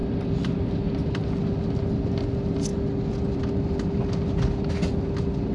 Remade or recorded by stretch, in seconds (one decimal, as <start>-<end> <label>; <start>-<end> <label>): 0.0-5.5 recorded